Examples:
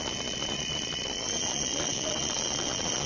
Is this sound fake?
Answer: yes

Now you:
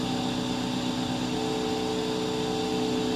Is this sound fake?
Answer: no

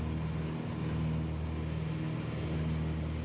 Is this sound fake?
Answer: no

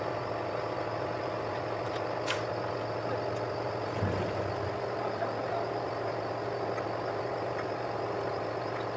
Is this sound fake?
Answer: no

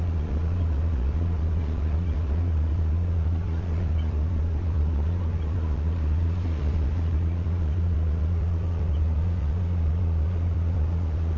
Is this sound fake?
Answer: yes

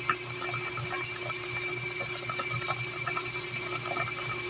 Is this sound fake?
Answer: no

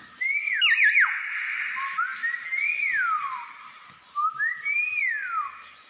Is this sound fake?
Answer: no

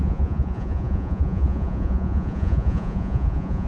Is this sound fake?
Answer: yes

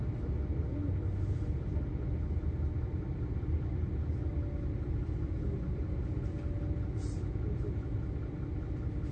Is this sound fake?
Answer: no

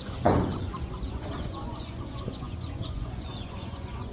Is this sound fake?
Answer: yes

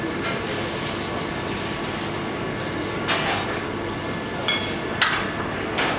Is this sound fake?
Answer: no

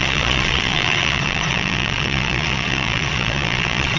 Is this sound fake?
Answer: yes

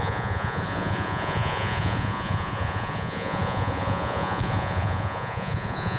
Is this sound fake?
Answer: yes